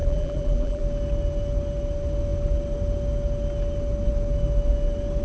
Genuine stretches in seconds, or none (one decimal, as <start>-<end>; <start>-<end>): 0.8-5.2